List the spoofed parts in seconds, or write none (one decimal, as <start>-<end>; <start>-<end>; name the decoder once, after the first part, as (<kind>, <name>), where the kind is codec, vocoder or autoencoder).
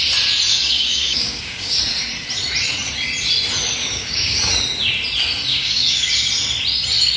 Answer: 0.5-1.8 (codec, DAC); 3.8-4.5; 5.5-6.1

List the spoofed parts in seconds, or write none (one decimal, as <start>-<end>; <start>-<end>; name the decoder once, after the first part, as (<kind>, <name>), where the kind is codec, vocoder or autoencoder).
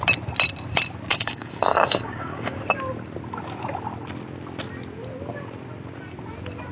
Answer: 1.1-2.6 (codec, DAC)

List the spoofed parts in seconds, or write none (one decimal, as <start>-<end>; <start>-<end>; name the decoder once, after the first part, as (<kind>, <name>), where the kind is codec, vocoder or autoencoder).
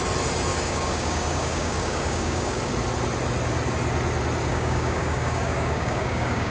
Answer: 0.5-2.7 (codec, DAC); 4.5-6.5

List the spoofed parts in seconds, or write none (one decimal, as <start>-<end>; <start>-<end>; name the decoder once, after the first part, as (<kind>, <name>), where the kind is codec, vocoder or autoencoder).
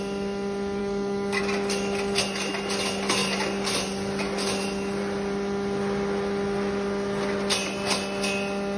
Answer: 0.8-1.4 (codec, DAC)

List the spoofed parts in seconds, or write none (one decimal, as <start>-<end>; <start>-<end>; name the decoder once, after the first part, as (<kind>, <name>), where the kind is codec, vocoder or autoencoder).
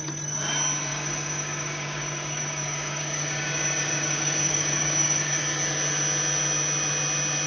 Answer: 0.9-5.4 (codec, DAC)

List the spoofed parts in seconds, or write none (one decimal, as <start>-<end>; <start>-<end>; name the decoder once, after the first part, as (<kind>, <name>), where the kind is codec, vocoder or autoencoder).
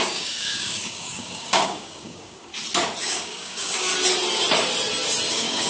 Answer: 0.0-2.5 (codec, DAC); 3.0-3.9; 5.3-5.7